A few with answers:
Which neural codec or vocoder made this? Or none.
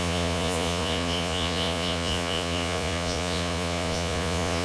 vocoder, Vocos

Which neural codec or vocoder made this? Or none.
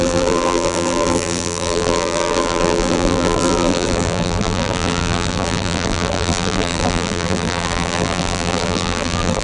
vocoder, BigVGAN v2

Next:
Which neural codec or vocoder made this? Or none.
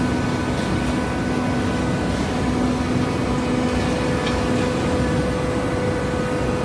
none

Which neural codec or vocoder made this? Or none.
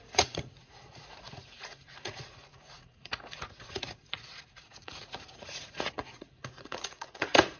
vocoder, Vocos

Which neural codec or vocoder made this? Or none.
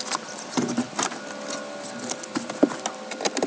none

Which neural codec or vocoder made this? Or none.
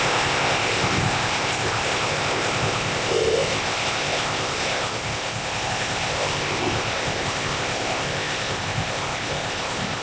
codec, ZipCodec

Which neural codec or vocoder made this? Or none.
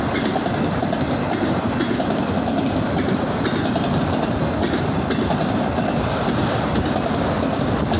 vocoder, BigVGAN v2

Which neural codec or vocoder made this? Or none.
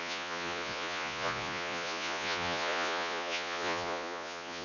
vocoder, Vocos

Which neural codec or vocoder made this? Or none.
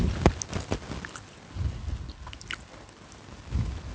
none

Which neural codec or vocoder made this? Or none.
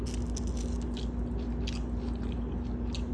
none